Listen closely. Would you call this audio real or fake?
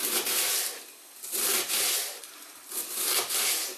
fake